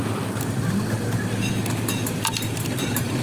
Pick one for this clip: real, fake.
real